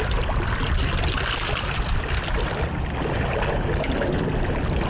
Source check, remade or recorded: recorded